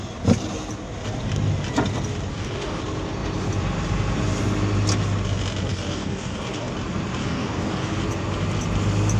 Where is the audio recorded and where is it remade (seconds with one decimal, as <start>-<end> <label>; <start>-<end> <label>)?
0.0-2.3 recorded; 2.3-2.8 remade; 2.8-5.7 recorded; 5.7-6.7 remade; 6.7-7.2 recorded; 7.2-8.0 remade; 8.0-9.2 recorded